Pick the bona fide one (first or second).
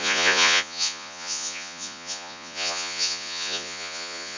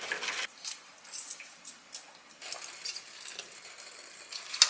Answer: second